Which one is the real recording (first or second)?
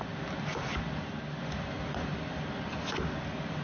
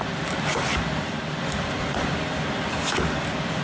first